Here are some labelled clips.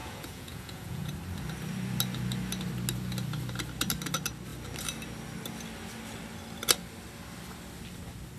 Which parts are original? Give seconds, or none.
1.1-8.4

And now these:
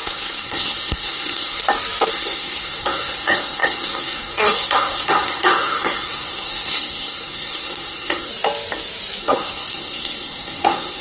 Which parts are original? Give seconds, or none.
1.6-2.1; 8.3-9.2

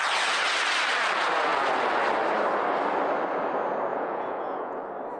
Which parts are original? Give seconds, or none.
0.0-3.9; 4.8-5.2

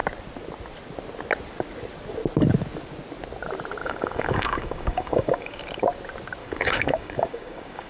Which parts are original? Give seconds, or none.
0.0-3.8; 5.6-6.4